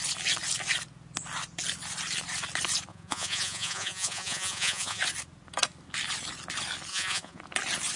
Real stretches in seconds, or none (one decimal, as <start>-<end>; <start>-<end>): 0.0-2.9; 5.0-6.9; 7.4-8.0